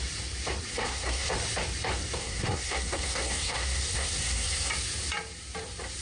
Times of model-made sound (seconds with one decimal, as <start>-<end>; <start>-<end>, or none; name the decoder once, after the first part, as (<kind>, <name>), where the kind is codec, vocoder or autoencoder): 0.7-1.3 (codec, SNAC); 2.2-4.7